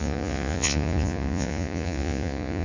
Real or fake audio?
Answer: fake